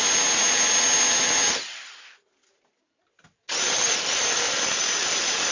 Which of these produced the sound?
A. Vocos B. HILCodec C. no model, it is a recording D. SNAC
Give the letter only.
C